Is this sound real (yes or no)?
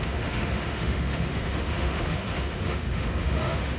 no